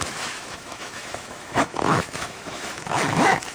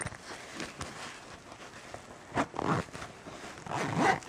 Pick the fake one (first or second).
first